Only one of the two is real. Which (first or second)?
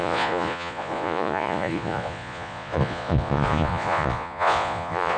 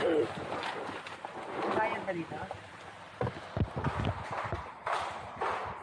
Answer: second